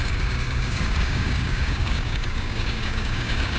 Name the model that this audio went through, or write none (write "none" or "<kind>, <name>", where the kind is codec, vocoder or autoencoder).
codec, DAC